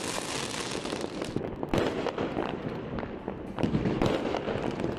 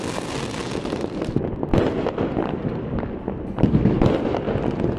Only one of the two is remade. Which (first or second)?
first